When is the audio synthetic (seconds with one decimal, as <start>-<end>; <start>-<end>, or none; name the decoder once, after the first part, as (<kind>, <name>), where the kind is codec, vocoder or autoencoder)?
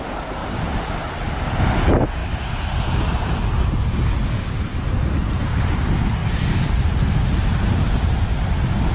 0.4-1.4 (vocoder, BigVGAN v2); 4.7-5.5; 6.2-8.4